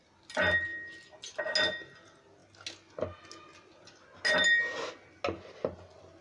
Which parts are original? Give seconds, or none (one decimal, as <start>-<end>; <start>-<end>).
0.0-6.2

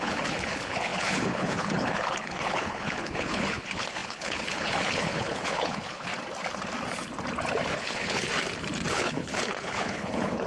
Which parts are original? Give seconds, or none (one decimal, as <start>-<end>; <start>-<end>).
6.1-7.7; 8.3-8.9

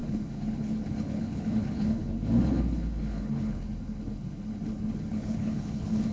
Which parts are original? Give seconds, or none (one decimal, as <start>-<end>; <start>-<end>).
none

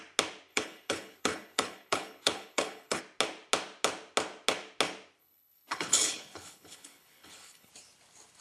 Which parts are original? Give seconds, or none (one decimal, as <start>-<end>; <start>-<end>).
0.0-0.5; 3.0-5.2; 7.7-8.4

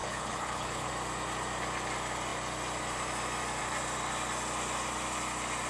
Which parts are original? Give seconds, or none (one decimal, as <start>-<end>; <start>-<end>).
0.9-5.7

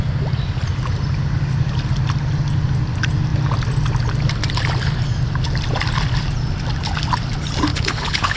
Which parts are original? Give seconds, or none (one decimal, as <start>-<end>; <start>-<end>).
0.0-7.7

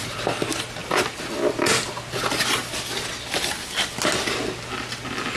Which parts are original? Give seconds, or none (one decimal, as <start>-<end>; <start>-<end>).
0.0-5.4